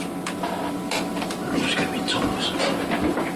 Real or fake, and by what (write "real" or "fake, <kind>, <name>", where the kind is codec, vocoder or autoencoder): fake, vocoder, BigVGAN v2